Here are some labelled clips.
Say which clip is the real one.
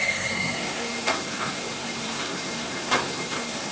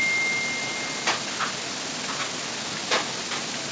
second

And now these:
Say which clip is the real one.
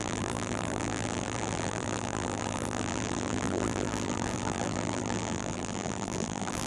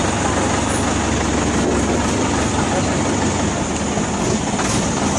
second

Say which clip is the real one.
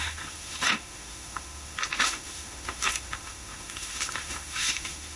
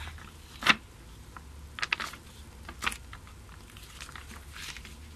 second